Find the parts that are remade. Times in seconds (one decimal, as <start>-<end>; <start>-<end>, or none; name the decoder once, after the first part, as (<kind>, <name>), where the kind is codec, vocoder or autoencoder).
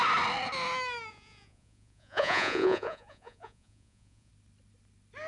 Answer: 1.1-4.3 (vocoder, Vocos)